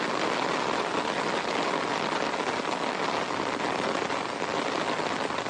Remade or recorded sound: recorded